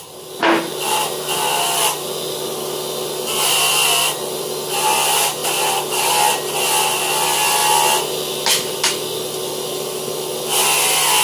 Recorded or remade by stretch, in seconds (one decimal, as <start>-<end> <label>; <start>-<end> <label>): 0.0-11.2 recorded